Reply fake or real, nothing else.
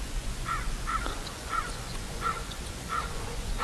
fake